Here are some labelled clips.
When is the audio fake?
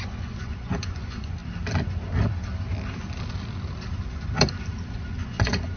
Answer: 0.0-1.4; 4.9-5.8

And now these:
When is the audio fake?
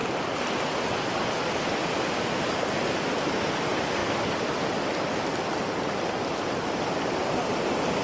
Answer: none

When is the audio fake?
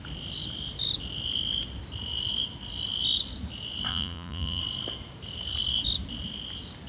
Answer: 3.9-4.6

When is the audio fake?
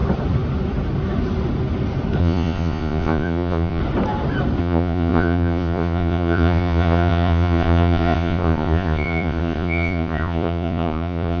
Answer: 2.2-3.8; 4.6-11.4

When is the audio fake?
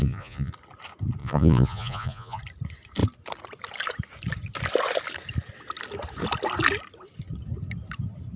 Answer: 0.0-0.5; 1.2-2.4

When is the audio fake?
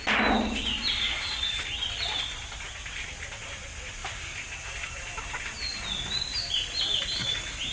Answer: none